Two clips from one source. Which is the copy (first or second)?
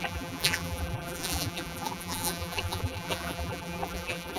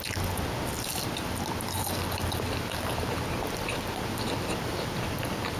first